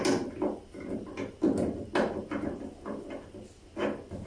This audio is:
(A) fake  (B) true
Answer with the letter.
B